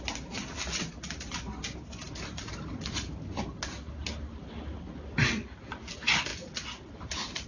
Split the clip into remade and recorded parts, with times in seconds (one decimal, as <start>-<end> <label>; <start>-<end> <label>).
0.0-6.3 recorded; 6.3-7.1 remade; 7.1-7.5 recorded